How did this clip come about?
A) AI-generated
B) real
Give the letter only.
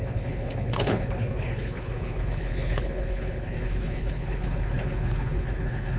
A